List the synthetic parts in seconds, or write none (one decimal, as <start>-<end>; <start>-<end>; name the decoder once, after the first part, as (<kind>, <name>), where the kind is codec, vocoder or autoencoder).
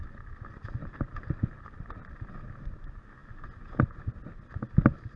none